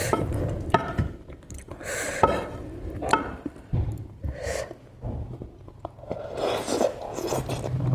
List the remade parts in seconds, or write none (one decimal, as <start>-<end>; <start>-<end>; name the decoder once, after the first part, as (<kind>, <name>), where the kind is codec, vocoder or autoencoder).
0.0-4.6 (vocoder, BigVGAN v2)